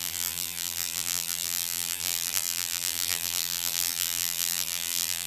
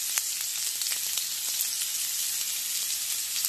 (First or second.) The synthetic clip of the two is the first